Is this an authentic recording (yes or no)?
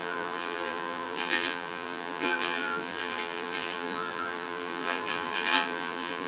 no